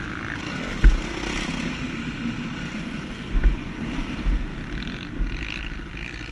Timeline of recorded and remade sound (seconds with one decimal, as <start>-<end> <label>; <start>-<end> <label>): 0.0-2.7 recorded; 2.7-3.8 remade; 3.8-6.3 recorded